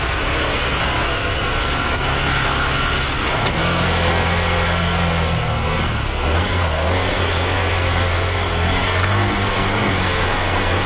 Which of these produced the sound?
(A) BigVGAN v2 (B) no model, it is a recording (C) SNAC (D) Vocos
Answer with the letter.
C